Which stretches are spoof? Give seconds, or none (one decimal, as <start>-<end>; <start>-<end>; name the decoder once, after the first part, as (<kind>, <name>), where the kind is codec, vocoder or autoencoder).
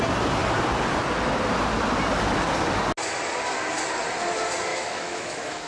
4.7-5.7 (autoencoder, DAC-VAE)